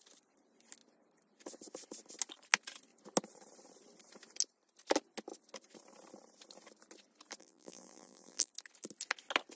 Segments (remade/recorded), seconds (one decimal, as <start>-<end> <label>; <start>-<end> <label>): 0.0-7.4 recorded; 7.4-8.5 remade; 8.5-9.6 recorded